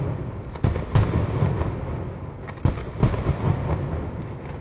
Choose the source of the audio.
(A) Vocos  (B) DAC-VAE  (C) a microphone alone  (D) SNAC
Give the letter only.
C